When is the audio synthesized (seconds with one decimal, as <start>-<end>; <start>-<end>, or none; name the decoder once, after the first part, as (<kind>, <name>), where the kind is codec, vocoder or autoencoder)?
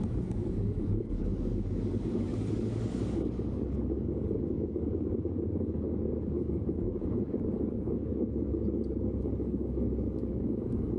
0.0-11.0 (codec, DAC)